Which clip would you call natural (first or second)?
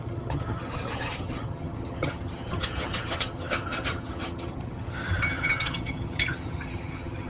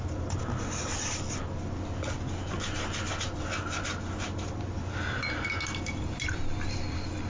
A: second